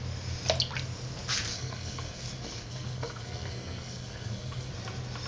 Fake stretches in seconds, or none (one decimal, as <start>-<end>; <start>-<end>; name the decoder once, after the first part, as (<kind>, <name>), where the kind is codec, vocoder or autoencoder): 1.5-4.7 (codec, SNAC)